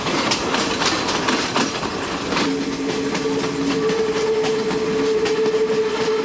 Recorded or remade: recorded